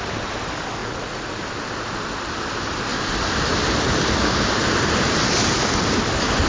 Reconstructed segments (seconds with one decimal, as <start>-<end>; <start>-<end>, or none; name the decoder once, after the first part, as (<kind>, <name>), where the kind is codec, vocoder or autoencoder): 0.8-1.4 (vocoder, Vocos)

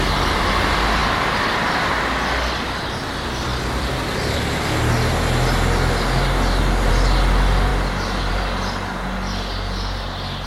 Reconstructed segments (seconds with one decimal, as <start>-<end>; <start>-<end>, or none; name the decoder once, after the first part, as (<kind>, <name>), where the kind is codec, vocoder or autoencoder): none

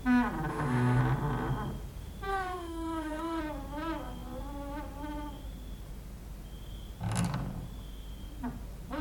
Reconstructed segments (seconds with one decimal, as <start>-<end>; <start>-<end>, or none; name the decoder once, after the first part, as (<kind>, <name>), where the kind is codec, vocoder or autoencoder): 0.5-1.0 (autoencoder, DAC-VAE); 2.3-3.4

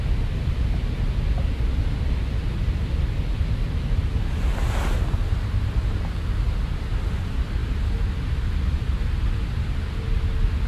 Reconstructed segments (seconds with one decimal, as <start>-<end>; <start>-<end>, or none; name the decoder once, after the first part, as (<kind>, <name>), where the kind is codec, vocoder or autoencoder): none

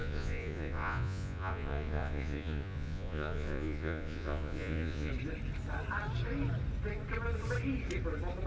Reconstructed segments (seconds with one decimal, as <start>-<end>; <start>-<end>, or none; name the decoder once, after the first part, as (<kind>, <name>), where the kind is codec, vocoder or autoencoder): 0.0-5.1 (vocoder, Vocos)

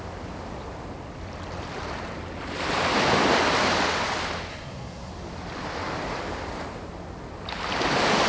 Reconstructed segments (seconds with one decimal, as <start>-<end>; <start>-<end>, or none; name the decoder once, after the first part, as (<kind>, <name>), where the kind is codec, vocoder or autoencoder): 4.5-5.1 (codec, SNAC)